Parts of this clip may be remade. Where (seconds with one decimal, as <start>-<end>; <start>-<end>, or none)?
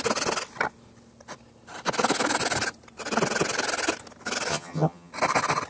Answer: 4.5-5.1